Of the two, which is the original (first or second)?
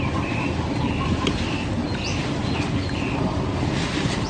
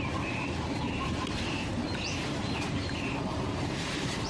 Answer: first